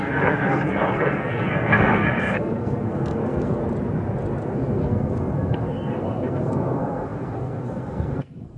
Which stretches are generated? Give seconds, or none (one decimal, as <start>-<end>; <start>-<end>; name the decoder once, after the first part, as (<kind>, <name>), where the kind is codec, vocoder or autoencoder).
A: 0.0-3.6 (codec, SNAC); 4.4-8.6